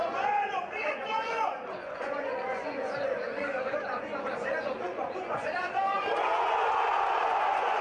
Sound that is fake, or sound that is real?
fake